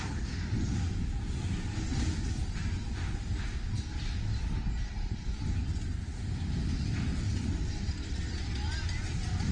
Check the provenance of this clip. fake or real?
real